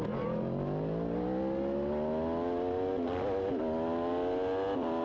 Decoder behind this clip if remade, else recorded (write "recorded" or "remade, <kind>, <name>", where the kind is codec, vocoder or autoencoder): recorded